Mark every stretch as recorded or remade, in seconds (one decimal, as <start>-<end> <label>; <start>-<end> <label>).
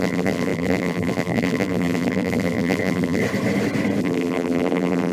0.0-3.2 remade; 3.2-4.0 recorded; 4.0-5.1 remade